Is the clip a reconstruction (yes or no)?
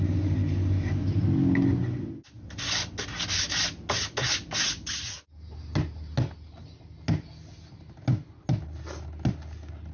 no